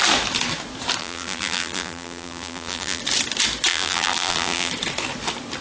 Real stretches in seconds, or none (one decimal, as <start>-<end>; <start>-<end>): 0.0-1.0; 3.0-3.7; 4.7-5.6